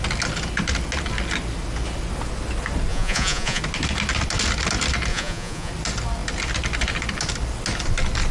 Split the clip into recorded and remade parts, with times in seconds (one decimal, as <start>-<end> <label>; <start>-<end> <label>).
0.0-2.9 recorded; 2.9-3.6 remade; 3.6-5.1 recorded; 5.1-5.7 remade; 5.7-8.3 recorded